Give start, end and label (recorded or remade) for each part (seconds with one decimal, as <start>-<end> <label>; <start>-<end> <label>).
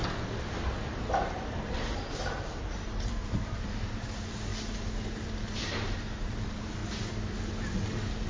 0.0-1.2 recorded; 1.2-4.5 remade; 4.5-5.4 recorded; 5.4-6.8 remade; 6.8-8.3 recorded